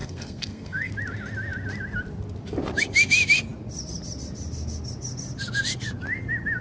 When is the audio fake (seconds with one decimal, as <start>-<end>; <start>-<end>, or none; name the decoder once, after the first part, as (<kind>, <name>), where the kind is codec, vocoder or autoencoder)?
0.0-0.9 (codec, SNAC)